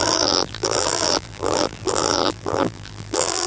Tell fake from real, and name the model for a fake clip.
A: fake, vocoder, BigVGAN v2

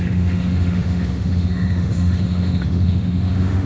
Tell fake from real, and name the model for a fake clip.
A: fake, autoencoder, DAC-VAE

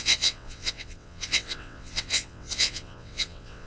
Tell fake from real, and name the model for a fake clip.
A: fake, vocoder, WaveNeXt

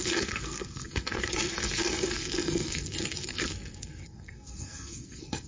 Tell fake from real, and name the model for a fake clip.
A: fake, codec, SNAC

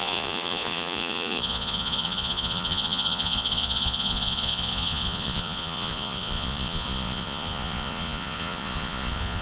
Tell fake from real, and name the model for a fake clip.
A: fake, vocoder, Vocos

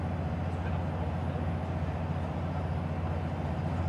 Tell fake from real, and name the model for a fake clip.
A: real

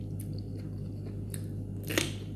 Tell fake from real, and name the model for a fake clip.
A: real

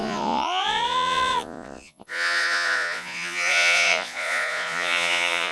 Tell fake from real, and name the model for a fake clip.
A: fake, vocoder, Vocos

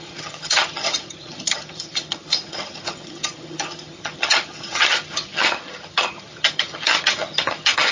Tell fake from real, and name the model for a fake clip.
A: fake, vocoder, HiFi-GAN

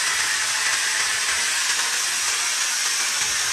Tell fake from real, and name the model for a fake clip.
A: real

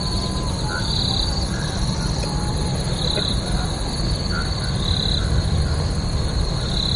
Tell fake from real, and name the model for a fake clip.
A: fake, vocoder, BigVGAN v2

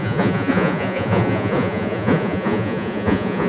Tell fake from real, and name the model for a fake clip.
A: fake, vocoder, Vocos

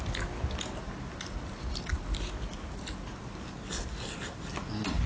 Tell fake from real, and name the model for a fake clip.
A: real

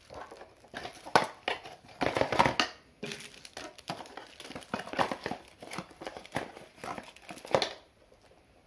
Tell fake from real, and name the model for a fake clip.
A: real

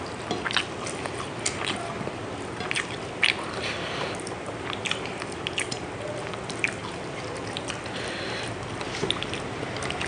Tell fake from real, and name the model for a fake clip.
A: real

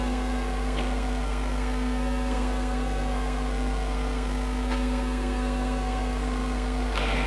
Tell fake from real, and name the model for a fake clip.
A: fake, codec, SNAC